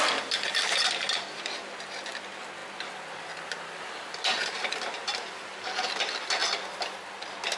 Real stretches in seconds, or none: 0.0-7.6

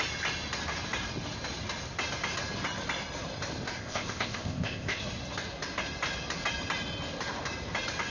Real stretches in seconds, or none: 0.0-3.8; 5.0-8.1

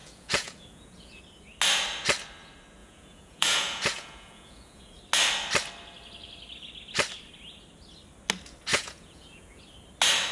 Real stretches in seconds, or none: 1.2-2.8; 5.0-8.7; 9.6-10.3